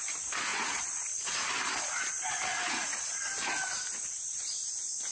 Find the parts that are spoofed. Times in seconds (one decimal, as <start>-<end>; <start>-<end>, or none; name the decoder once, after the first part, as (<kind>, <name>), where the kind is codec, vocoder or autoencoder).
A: 0.5-1.5 (vocoder, Vocos); 2.5-3.2